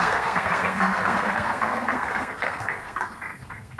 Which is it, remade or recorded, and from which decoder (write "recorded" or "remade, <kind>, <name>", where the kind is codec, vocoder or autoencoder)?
remade, codec, SNAC